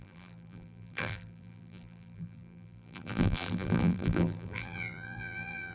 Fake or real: fake